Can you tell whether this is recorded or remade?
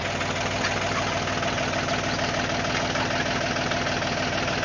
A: recorded